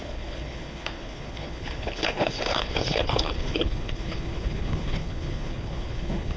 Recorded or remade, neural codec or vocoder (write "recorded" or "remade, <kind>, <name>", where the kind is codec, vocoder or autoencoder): remade, codec, HILCodec